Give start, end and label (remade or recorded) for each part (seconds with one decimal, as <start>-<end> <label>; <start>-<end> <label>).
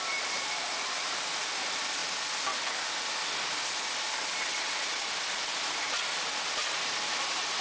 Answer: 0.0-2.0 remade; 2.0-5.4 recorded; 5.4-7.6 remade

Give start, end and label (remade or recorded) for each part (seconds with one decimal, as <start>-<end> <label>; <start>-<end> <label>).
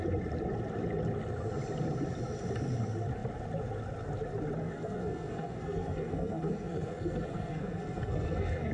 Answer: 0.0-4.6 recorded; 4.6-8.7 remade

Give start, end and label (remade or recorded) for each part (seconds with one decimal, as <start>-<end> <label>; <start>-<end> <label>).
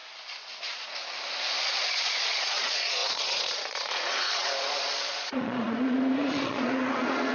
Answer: 0.0-1.7 recorded; 1.7-7.3 remade